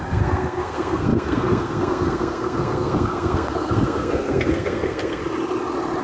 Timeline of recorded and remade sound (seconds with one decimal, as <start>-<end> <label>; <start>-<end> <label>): 0.0-5.2 remade; 5.2-6.0 recorded